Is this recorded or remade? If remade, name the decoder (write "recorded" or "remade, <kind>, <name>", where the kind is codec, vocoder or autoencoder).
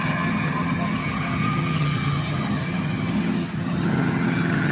remade, vocoder, HiFi-GAN